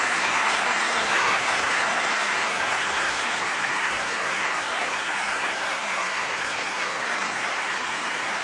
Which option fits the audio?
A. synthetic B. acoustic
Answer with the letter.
A